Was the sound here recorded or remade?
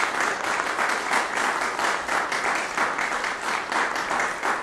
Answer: recorded